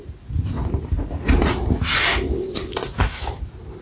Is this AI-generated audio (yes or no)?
no